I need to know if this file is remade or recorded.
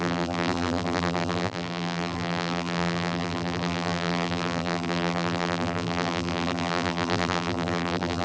remade